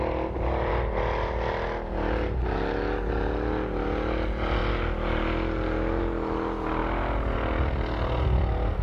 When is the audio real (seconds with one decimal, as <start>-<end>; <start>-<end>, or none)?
0.0-8.8